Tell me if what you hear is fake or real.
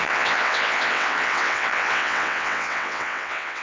fake